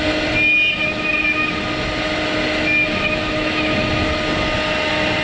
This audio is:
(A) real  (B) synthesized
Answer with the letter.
A